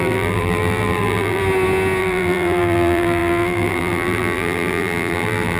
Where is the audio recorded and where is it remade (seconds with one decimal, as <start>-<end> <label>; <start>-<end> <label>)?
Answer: 0.0-1.4 remade; 1.4-2.0 recorded; 2.0-5.6 remade